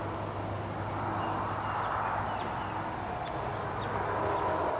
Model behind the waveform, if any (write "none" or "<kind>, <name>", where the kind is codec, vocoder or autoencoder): none